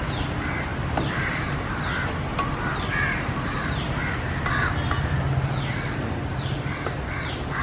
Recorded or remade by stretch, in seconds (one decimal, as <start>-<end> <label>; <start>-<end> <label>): 0.0-7.6 recorded